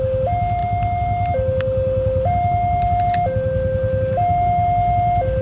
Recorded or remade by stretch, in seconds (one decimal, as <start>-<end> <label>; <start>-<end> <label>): 0.0-5.4 recorded